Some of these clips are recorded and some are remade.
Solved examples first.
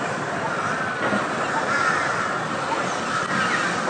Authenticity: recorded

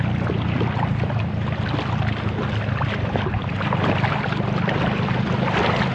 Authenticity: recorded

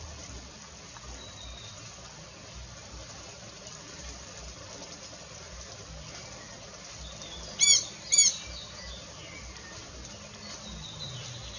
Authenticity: recorded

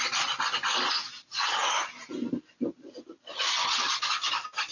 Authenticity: recorded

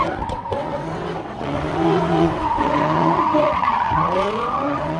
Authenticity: remade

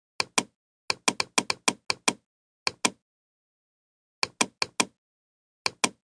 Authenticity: recorded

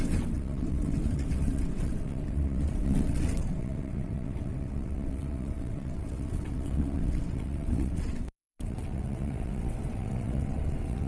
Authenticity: remade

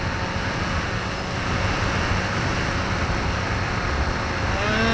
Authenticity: recorded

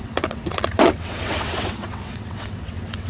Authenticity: remade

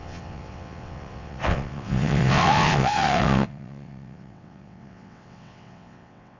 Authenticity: remade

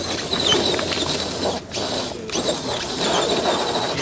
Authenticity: recorded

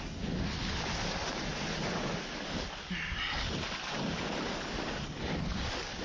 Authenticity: recorded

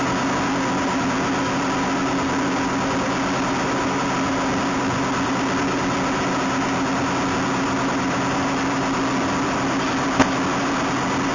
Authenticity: recorded